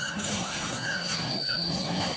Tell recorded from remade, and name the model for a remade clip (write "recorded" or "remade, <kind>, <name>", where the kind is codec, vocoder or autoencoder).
remade, codec, SNAC